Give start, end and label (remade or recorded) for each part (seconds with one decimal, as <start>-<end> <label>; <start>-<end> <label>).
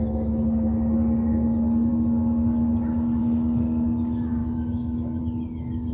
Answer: 0.0-4.4 recorded; 4.4-5.2 remade; 5.2-5.9 recorded